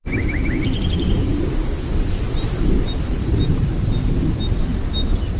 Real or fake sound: real